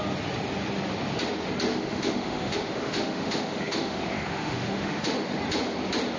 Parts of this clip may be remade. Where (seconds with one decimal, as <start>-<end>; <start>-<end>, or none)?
1.7-5.4